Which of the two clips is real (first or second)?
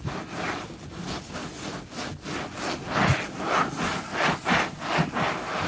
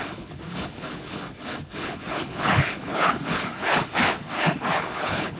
first